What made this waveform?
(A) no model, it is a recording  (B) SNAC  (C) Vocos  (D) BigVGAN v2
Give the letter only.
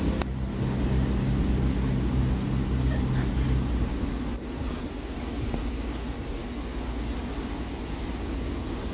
A